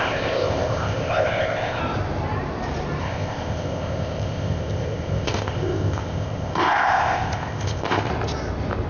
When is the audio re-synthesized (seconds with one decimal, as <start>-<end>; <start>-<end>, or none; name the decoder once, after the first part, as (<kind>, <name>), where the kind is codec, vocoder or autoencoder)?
0.0-1.8 (codec, ZipCodec); 3.0-8.1